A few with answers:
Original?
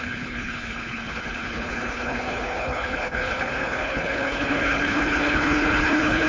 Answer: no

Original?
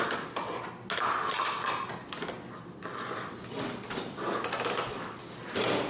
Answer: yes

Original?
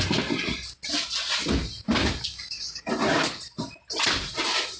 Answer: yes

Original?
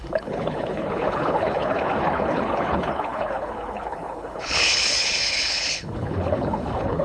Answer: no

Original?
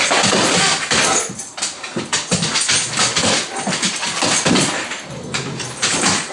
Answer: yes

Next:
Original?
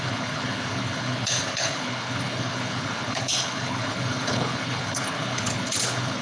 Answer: no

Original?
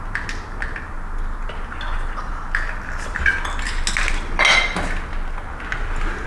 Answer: yes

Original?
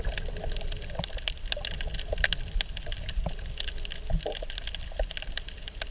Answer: yes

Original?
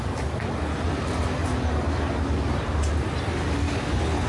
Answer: yes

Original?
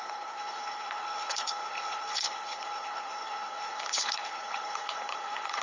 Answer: no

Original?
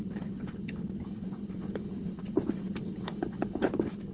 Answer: no